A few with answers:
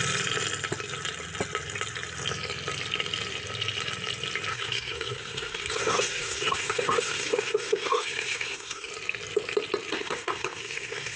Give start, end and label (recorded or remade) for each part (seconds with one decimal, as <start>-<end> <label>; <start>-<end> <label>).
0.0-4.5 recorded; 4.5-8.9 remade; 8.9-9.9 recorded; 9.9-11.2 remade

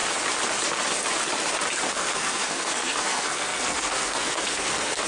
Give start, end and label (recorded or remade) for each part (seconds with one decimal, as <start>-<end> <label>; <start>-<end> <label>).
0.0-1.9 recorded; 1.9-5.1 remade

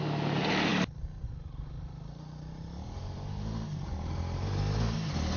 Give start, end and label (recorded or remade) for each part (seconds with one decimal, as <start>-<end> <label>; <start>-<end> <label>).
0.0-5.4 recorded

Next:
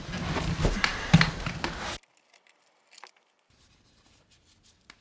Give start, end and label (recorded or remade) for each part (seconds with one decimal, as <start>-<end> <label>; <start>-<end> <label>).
0.0-5.0 recorded

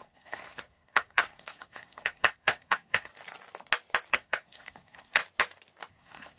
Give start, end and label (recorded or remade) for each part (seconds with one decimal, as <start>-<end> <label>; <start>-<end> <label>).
0.0-3.1 remade; 3.1-4.1 recorded; 4.1-5.2 remade; 5.2-5.9 recorded; 5.9-6.4 remade

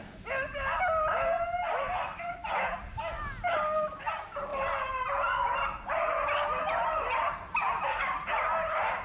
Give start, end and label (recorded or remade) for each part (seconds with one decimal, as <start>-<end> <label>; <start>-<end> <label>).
0.0-9.0 recorded

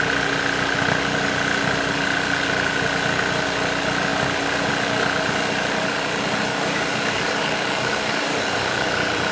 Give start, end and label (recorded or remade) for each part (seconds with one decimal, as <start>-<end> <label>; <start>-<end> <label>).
0.0-6.5 recorded; 6.5-8.9 remade; 8.9-9.3 recorded

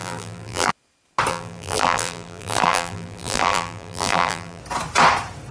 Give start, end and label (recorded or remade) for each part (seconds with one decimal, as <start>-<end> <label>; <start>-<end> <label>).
0.0-0.7 remade; 0.7-1.3 recorded; 1.3-4.6 remade; 4.6-5.5 recorded